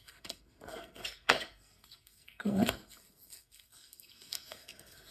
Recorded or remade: remade